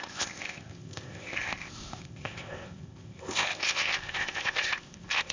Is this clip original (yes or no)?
no